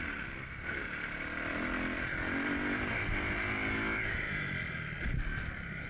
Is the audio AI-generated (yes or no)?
no